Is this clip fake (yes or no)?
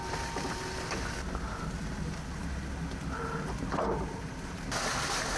no